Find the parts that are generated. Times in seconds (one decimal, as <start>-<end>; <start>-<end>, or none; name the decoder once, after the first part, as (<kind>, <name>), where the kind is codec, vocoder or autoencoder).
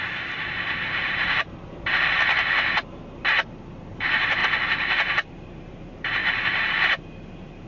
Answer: 0.0-2.0 (vocoder, BigVGAN v2); 3.8-4.4; 5.3-7.7